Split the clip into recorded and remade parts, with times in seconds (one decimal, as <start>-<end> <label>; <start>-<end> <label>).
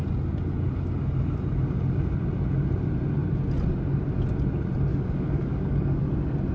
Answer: 0.0-4.9 recorded; 4.9-6.1 remade; 6.1-6.5 recorded